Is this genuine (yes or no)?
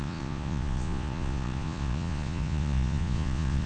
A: no